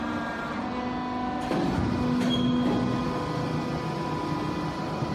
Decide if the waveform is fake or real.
real